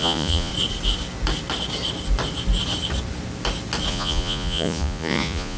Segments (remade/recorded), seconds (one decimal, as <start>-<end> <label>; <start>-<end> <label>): 0.0-0.5 remade; 0.5-3.9 recorded; 3.9-5.6 remade